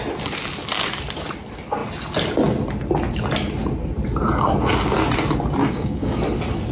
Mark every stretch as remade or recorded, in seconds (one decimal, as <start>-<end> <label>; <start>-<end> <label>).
0.0-5.6 recorded; 5.6-6.2 remade; 6.2-6.7 recorded